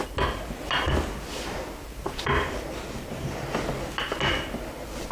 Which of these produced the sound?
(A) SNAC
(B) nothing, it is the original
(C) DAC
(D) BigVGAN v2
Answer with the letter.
B